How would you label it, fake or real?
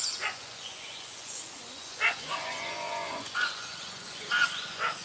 fake